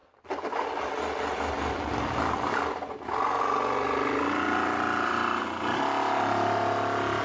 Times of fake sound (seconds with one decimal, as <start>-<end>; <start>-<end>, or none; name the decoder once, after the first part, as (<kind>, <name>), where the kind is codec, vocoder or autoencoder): none